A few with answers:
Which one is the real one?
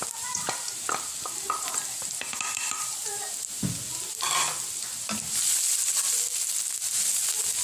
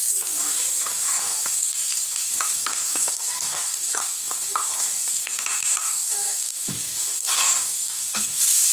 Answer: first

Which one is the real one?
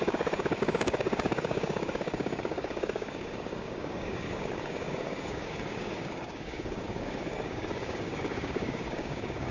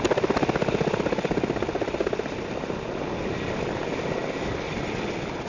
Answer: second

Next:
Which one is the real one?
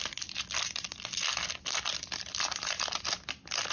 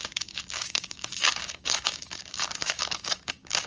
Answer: first